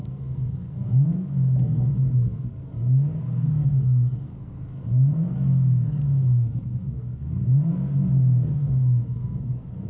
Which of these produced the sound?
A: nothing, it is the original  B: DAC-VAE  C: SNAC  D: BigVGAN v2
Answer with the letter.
C